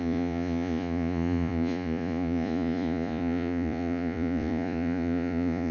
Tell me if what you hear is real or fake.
fake